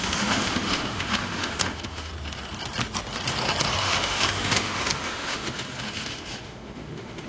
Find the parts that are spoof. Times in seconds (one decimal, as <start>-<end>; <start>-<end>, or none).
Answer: 0.0-2.1; 3.8-7.3

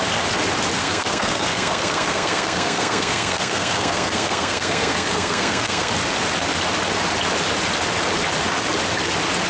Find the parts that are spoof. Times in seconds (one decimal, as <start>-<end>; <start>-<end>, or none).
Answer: 0.8-5.9

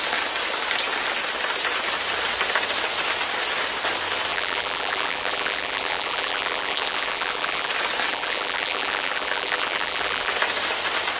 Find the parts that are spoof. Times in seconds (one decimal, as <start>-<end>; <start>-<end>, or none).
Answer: 4.3-7.7; 8.1-10.3